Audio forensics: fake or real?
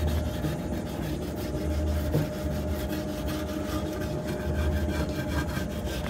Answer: real